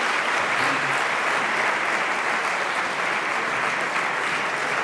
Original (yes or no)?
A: yes